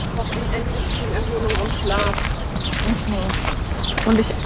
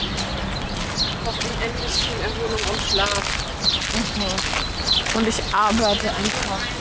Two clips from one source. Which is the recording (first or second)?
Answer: second